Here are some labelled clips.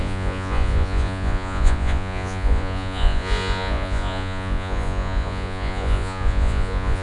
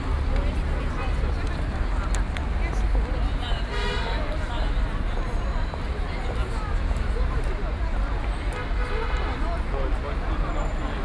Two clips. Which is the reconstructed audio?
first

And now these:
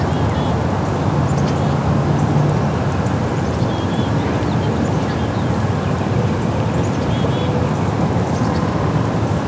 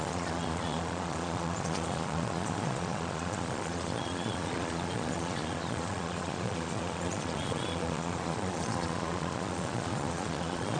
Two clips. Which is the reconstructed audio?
second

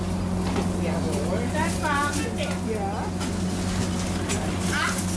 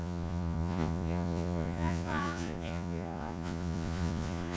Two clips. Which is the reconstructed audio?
second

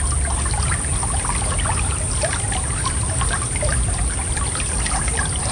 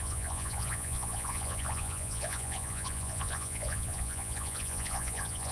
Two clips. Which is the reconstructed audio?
second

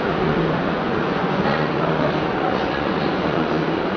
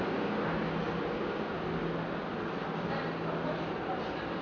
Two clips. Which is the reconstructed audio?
first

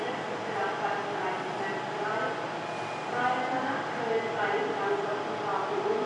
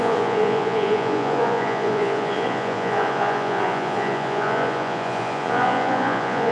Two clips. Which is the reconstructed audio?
second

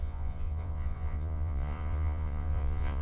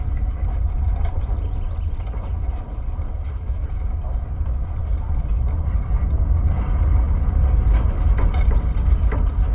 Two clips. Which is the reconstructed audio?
first